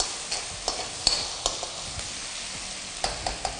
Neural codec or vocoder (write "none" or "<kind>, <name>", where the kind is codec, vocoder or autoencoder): none